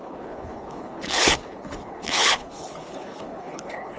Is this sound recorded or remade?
remade